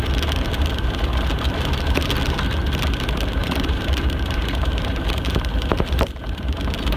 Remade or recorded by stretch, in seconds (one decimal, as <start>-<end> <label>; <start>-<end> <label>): 0.0-3.4 recorded; 3.4-6.6 remade; 6.6-7.0 recorded